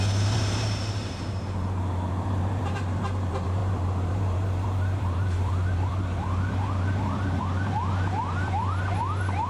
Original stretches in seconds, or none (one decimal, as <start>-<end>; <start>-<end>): none